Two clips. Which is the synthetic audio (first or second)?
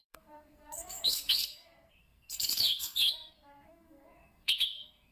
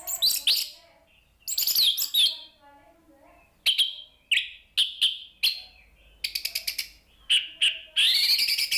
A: first